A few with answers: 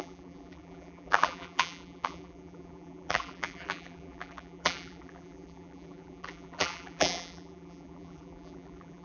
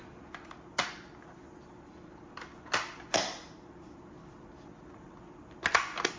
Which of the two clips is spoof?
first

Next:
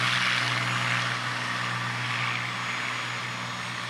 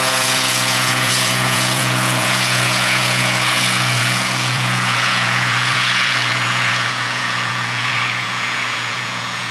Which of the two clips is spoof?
second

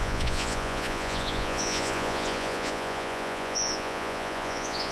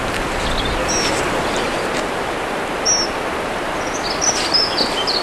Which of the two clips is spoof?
first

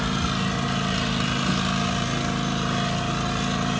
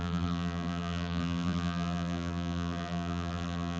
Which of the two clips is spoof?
second